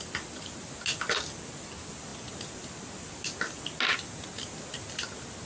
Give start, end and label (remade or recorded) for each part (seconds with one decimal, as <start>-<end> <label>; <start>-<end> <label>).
0.0-5.5 recorded